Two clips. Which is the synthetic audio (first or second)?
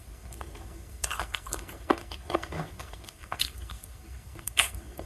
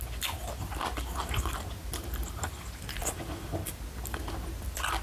first